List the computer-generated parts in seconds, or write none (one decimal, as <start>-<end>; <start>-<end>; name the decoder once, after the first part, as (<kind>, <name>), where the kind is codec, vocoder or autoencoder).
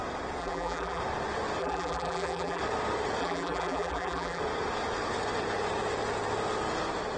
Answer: 0.4-1.0 (vocoder, BigVGAN v2); 1.6-2.6; 3.2-4.4